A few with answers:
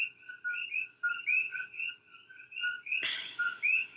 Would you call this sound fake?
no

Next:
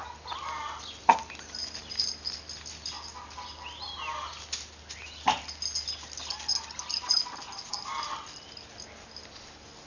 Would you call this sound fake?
no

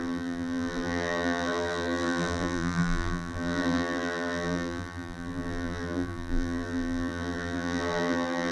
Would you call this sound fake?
yes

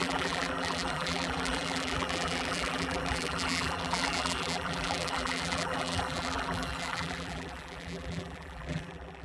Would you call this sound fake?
yes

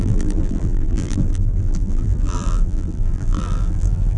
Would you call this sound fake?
yes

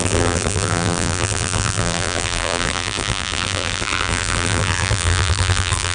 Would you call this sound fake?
yes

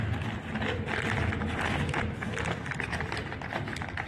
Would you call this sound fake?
no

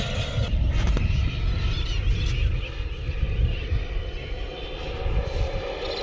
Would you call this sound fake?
no